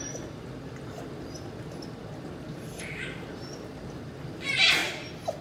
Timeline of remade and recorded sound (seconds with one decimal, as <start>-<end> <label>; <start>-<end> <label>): 0.0-4.8 recorded; 4.8-5.4 remade